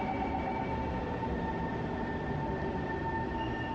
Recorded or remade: recorded